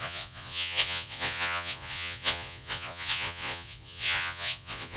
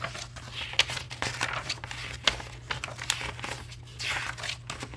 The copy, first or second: first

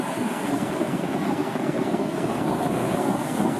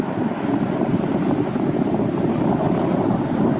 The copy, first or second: first